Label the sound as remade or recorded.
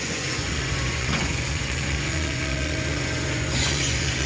remade